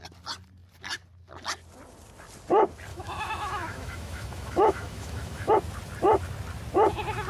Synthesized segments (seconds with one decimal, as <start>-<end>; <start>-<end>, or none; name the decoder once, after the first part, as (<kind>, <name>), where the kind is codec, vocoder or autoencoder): 2.9-5.5 (autoencoder, DAC-VAE)